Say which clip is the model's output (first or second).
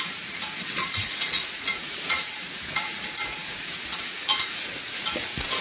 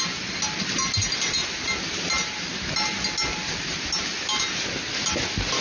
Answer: first